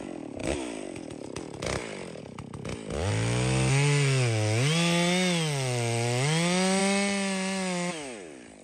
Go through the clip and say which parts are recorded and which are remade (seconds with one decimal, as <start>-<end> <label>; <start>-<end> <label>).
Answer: 0.0-8.6 recorded

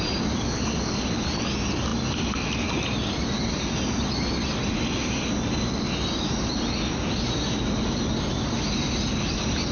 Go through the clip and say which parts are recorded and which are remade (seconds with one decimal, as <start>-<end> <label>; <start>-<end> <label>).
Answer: 0.0-9.7 recorded

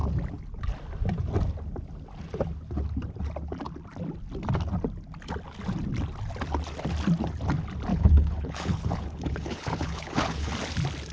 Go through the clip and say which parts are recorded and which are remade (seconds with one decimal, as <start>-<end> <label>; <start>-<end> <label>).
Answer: 0.0-7.9 recorded; 7.9-10.5 remade; 10.5-11.1 recorded